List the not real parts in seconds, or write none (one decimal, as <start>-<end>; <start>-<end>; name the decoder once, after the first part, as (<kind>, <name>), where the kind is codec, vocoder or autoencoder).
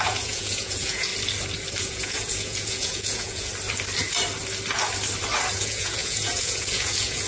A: 0.0-1.1 (vocoder, Vocos); 1.8-3.5; 5.6-7.3